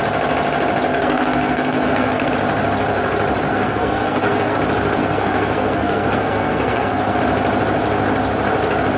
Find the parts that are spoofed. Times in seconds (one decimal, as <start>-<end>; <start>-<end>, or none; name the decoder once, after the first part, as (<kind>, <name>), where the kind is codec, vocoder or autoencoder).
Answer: 0.9-2.3 (codec, SNAC); 3.5-4.6; 5.0-7.2